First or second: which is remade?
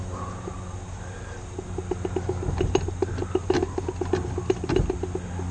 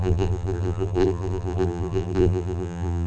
second